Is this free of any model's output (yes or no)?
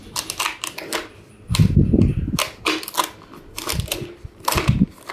yes